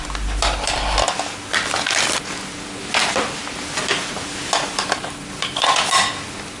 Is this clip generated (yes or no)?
no